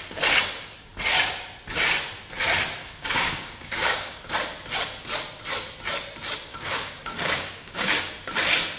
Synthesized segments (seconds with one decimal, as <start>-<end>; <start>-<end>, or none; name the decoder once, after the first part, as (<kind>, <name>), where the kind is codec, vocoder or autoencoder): 2.8-4.3 (codec, DAC); 6.5-8.1